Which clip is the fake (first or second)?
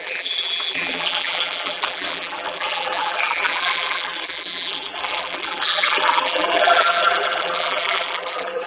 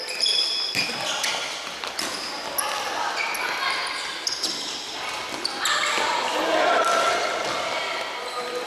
first